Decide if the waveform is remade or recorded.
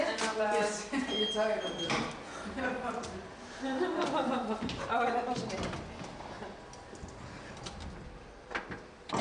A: recorded